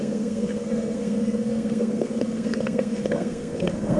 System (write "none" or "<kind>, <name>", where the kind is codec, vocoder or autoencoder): codec, SNAC